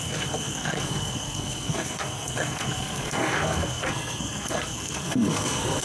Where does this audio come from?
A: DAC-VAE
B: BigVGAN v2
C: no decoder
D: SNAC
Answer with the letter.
D